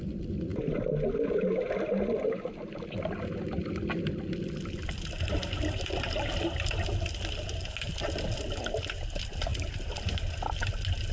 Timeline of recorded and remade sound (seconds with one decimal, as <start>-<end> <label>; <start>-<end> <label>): 0.0-11.1 recorded